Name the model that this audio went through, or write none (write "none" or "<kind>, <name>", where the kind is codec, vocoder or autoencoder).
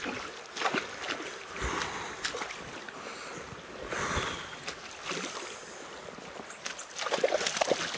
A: none